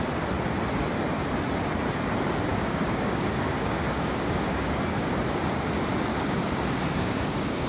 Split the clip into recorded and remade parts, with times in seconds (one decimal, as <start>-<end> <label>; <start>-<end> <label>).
0.0-2.5 recorded; 2.5-5.1 remade; 5.1-6.1 recorded; 6.1-7.7 remade